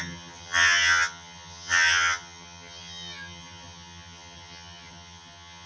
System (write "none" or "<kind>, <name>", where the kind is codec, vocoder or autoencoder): vocoder, HiFi-GAN